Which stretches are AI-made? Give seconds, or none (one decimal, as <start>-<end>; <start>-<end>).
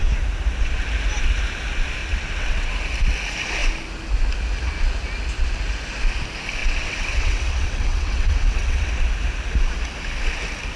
2.0-2.7; 6.6-8.9